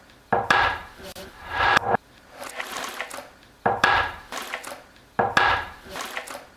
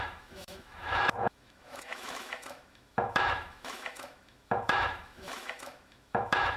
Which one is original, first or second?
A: first